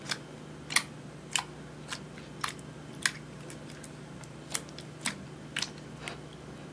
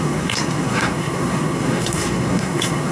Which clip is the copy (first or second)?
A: second